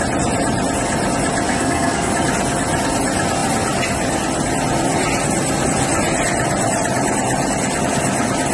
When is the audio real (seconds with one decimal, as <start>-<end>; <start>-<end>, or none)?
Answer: 0.0-1.5; 2.1-8.5